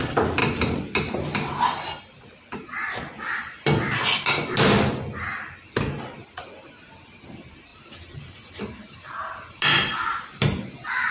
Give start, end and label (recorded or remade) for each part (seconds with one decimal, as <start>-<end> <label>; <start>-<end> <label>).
0.0-11.1 recorded

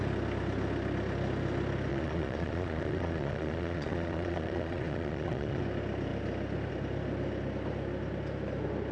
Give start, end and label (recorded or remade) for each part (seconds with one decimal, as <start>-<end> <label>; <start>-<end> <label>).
0.0-1.9 recorded; 1.9-5.6 remade; 5.6-8.9 recorded

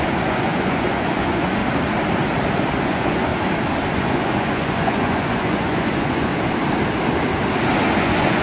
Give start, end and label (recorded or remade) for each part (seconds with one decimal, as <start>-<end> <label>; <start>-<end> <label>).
0.0-1.6 remade; 1.6-2.8 recorded; 2.8-3.3 remade; 3.3-3.9 recorded; 3.9-6.3 remade; 6.3-8.0 recorded; 8.0-8.4 remade

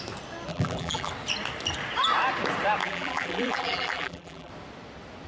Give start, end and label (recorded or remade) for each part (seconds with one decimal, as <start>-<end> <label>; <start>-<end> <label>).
0.0-0.5 recorded; 0.5-1.1 remade; 1.1-2.8 recorded; 2.8-4.5 remade; 4.5-5.3 recorded

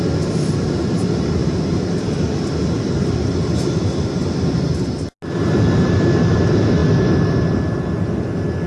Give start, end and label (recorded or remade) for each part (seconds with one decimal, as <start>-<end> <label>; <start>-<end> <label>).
0.0-8.7 recorded

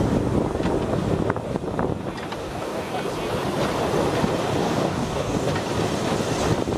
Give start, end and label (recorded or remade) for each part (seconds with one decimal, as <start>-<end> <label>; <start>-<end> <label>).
0.0-2.4 recorded; 2.4-2.9 remade; 2.9-4.6 recorded; 4.6-5.5 remade; 5.5-6.8 recorded